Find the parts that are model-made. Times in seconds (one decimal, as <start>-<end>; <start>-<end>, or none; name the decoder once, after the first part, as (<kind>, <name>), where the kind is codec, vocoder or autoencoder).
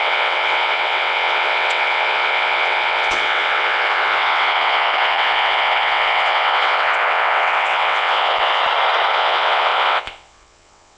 0.0-8.6 (vocoder, WaveNeXt); 9.1-11.0